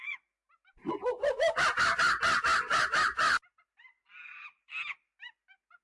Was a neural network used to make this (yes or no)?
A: no